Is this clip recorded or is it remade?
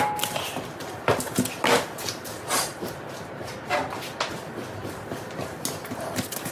recorded